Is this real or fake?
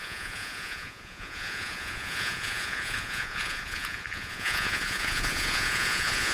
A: fake